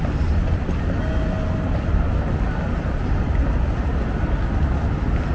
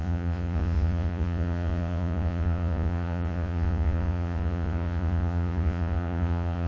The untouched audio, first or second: first